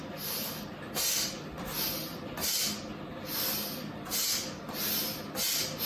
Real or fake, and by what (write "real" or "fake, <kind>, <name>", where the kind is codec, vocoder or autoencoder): real